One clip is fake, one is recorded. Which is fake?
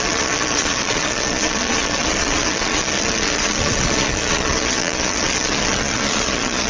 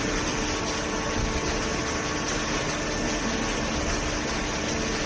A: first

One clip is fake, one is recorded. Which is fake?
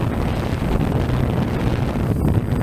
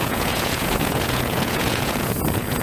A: second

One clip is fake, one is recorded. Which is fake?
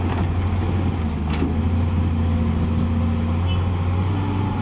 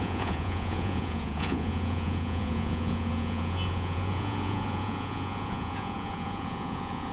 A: second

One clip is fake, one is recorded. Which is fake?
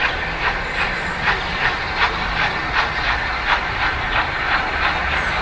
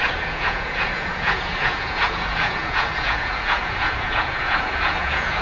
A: second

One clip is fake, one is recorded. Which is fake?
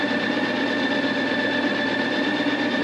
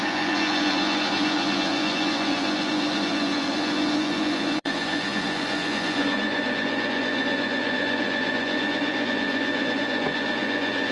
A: second